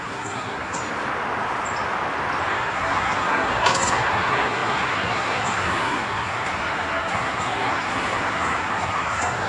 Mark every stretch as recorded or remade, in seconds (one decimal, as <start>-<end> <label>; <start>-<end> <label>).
0.0-0.8 remade; 0.8-2.5 recorded; 2.5-9.5 remade